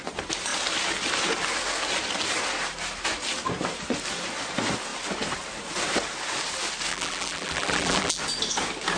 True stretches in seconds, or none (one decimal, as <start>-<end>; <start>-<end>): 0.0-6.9; 8.2-9.0